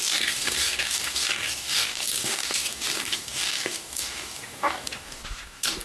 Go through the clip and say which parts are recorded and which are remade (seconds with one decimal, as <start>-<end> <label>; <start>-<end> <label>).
0.0-5.8 remade